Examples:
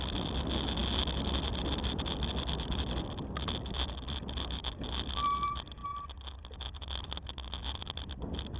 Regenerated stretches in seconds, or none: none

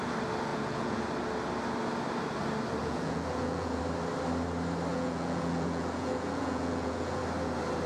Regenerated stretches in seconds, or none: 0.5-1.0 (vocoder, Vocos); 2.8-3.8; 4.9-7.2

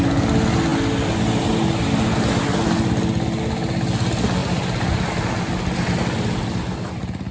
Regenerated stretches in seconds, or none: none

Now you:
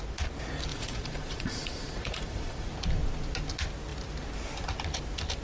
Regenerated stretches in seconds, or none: 0.7-2.7 (vocoder, Vocos)

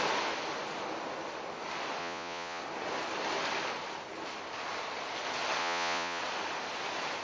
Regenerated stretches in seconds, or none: 2.0-2.6 (vocoder, Vocos); 5.6-6.2

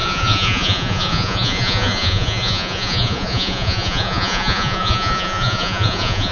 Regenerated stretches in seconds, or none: 0.0-6.3 (vocoder, Vocos)

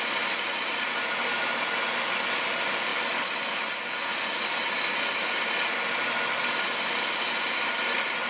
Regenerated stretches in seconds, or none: none